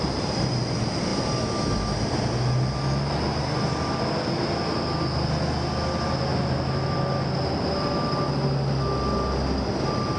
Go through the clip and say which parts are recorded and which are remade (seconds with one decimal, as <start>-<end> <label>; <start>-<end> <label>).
0.0-10.2 recorded